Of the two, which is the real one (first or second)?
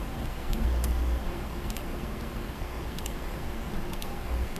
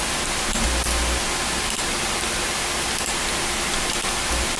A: second